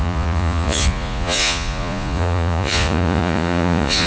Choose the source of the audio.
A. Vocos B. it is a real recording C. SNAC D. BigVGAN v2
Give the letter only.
A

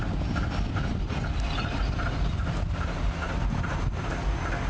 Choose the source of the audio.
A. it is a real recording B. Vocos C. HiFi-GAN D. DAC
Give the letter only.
A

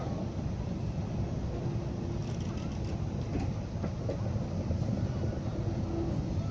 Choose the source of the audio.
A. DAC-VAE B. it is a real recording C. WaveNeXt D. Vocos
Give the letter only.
B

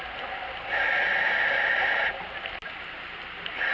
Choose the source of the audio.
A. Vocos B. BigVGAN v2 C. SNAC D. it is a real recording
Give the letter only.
D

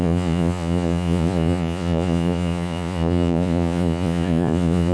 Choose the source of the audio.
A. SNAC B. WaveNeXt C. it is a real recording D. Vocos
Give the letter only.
D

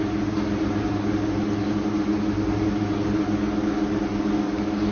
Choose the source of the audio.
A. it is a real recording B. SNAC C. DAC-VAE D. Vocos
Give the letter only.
A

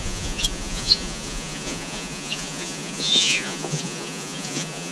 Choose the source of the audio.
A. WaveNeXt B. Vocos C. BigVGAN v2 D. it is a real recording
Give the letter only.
B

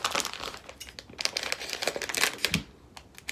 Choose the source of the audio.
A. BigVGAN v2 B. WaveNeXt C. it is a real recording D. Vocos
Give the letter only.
C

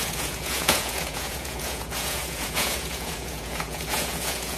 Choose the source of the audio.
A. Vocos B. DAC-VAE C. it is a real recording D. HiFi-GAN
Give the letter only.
A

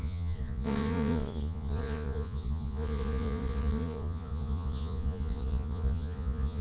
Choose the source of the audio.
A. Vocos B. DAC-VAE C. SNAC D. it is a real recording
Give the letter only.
A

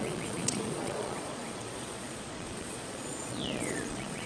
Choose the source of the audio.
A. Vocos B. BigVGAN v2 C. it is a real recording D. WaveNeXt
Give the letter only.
A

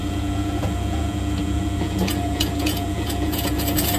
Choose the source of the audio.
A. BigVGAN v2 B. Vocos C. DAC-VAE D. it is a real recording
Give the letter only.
B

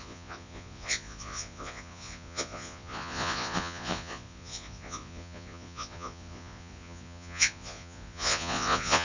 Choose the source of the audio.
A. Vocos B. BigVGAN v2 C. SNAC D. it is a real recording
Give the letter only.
A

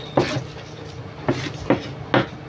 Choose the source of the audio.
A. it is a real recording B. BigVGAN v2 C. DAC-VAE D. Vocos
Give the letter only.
A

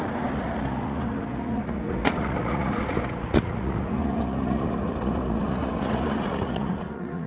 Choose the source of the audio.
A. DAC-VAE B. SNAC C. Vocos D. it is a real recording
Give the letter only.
C